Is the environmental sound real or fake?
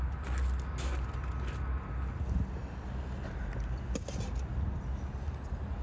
real